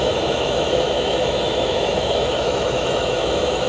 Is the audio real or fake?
fake